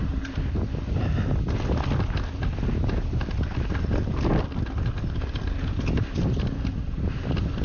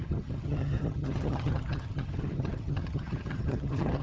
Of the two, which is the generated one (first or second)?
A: second